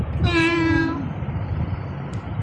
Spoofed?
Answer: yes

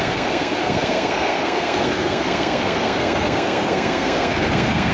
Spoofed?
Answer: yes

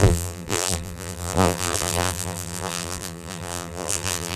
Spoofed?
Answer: yes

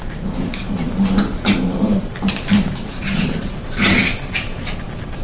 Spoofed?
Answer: yes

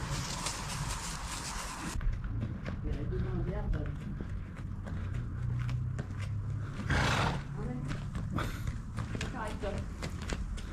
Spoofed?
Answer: no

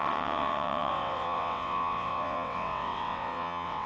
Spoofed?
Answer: yes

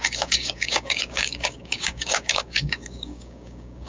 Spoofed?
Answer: yes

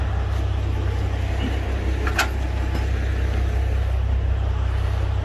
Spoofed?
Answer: no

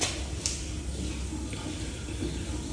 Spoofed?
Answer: no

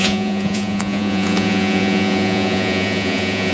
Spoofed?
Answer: yes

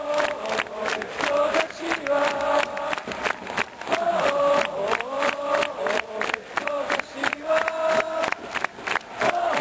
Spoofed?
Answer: no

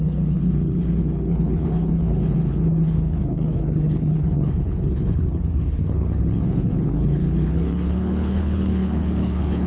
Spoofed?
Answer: yes